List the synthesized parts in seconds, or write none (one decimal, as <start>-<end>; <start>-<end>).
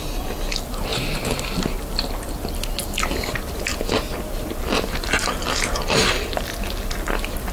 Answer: none